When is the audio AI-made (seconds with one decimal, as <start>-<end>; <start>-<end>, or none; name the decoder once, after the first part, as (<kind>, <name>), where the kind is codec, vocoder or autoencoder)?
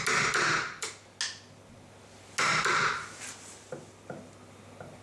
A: 2.7-3.3 (vocoder, BigVGAN v2)